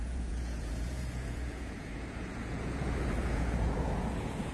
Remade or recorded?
remade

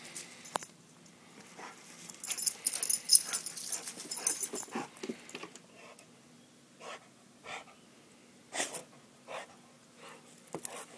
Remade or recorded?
recorded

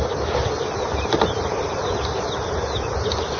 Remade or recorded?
recorded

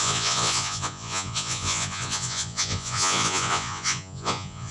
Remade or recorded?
remade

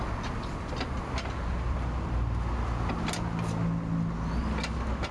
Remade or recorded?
recorded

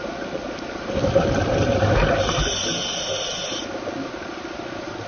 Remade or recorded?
recorded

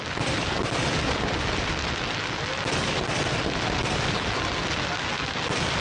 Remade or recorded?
recorded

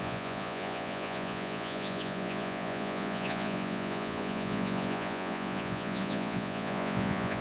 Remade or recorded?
remade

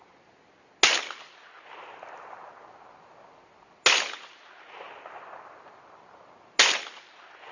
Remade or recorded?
recorded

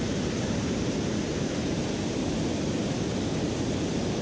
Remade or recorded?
recorded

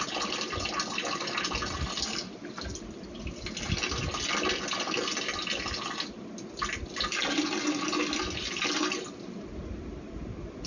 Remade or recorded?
recorded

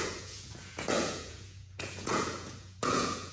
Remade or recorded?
remade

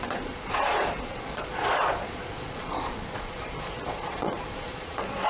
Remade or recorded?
remade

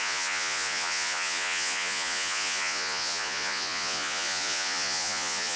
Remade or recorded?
remade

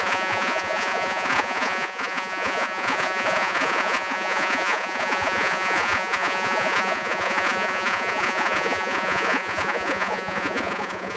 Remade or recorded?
remade